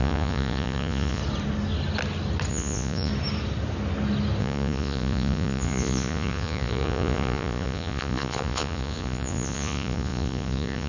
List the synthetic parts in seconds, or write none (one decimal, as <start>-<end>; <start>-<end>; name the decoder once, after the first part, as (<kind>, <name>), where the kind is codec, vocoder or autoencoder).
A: 0.0-1.2 (vocoder, Vocos); 2.5-3.1; 4.4-10.9

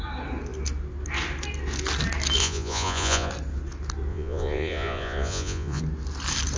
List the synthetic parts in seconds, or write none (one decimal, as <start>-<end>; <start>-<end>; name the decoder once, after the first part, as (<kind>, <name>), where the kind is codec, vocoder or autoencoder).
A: 2.4-3.3 (vocoder, Vocos); 4.1-5.8

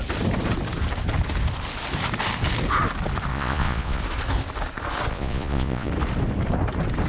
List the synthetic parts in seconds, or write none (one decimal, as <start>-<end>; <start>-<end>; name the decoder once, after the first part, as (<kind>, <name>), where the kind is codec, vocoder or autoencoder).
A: 3.3-4.0 (vocoder, Vocos); 5.1-5.9

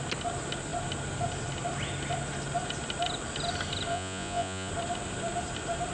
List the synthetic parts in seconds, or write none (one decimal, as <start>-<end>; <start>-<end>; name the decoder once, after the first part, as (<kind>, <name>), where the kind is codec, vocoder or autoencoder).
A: 3.9-4.7 (vocoder, Vocos)

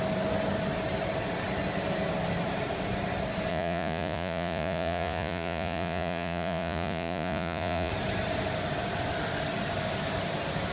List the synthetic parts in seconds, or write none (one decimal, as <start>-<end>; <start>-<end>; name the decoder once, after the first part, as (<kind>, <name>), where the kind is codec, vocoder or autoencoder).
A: 3.5-7.9 (vocoder, Vocos)

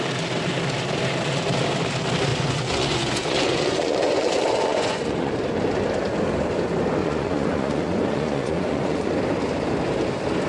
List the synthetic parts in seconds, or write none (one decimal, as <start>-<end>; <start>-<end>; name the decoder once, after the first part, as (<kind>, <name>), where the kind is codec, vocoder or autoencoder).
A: 2.3-5.3 (vocoder, Vocos); 7.0-9.1